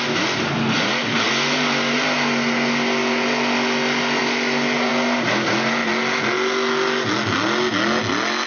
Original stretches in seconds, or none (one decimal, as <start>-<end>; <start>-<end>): 0.0-8.5